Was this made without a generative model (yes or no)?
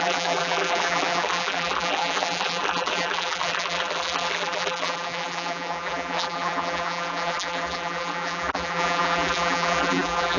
no